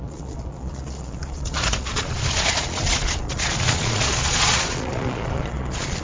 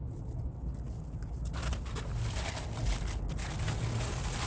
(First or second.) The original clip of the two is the second